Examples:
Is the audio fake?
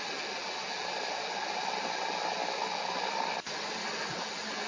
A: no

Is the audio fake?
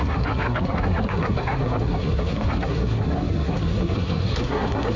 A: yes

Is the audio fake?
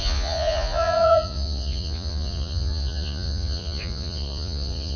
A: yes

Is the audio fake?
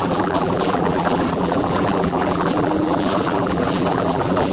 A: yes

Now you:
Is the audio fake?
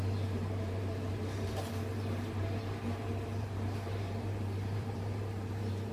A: yes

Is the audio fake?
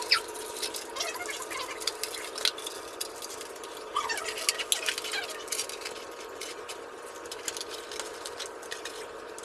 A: no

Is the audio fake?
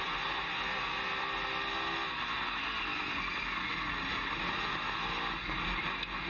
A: no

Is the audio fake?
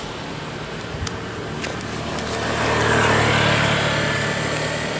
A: no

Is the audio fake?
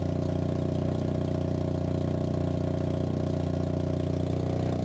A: no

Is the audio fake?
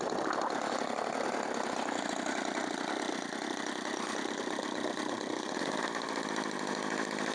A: no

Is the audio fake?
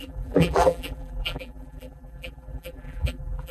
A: yes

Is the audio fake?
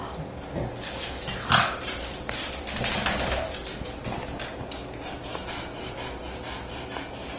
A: no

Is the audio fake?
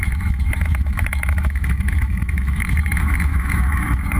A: yes